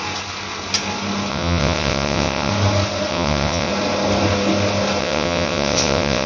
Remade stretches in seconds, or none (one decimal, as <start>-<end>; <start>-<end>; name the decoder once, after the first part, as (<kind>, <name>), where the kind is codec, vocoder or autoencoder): 1.3-2.5 (vocoder, WaveNeXt); 3.1-3.7; 5.0-6.3